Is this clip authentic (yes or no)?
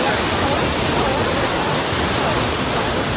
yes